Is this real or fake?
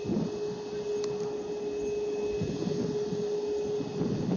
real